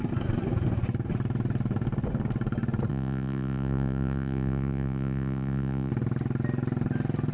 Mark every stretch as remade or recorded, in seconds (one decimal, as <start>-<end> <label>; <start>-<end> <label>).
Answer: 0.0-2.9 recorded; 2.9-5.9 remade; 5.9-7.3 recorded